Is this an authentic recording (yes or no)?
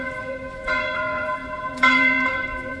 no